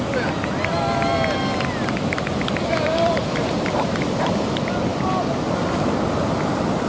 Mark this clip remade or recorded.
recorded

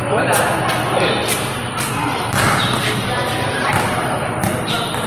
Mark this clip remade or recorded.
recorded